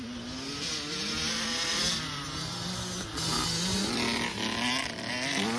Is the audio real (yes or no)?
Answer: yes